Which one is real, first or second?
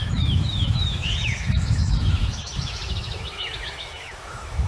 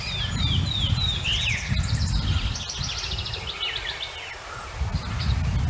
second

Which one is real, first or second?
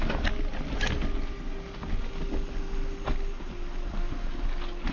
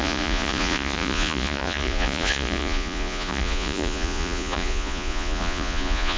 first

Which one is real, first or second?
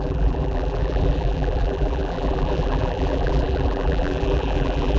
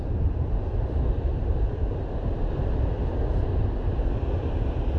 second